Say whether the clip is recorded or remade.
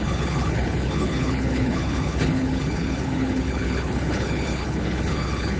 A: remade